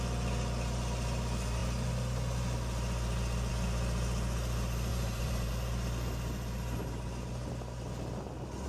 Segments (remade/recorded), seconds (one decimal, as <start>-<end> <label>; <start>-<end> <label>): 0.0-4.9 recorded; 4.9-5.5 remade; 5.5-8.7 recorded